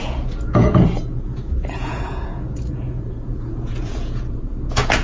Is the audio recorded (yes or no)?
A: no